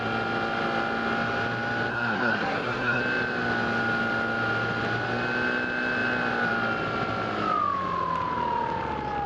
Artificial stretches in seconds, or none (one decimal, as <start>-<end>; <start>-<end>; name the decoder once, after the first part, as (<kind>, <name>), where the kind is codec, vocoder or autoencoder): 1.9-3.0 (codec, SNAC)